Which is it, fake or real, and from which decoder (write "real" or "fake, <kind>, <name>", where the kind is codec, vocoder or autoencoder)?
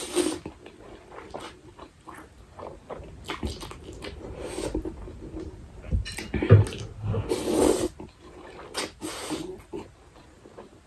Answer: real